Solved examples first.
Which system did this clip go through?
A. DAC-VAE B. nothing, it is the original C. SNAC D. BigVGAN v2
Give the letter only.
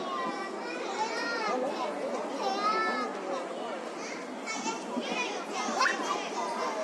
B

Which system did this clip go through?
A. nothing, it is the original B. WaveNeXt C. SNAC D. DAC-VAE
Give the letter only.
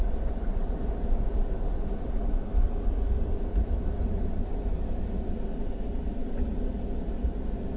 A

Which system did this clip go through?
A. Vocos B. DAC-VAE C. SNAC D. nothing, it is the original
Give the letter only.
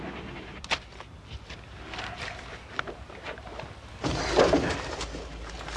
D